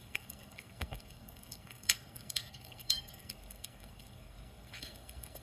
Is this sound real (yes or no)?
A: no